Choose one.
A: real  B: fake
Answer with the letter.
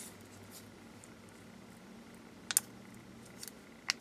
A